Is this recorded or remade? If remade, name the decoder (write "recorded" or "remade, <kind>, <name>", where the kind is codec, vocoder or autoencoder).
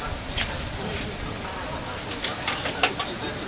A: recorded